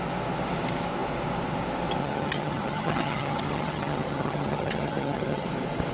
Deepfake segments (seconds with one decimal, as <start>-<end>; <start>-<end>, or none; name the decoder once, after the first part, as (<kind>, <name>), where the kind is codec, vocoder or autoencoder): 2.0-5.5 (vocoder, HiFi-GAN)